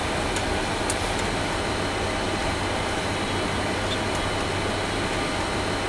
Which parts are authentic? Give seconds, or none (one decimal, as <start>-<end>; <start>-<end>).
0.8-2.4; 3.1-5.9